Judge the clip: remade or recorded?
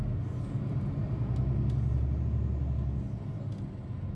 recorded